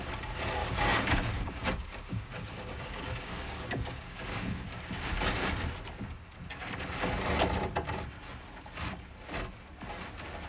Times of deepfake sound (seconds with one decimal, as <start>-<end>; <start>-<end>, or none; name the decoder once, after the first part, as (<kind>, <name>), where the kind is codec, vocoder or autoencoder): 0.6-5.1 (codec, DAC)